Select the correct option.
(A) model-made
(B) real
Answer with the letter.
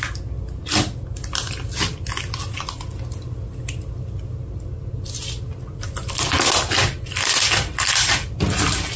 B